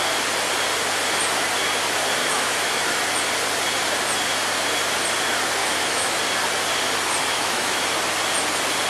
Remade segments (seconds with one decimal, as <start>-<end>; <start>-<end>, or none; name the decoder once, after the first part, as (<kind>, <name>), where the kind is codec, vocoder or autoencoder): 2.2-3.0 (autoencoder, DAC-VAE); 5.6-6.2; 7.3-7.8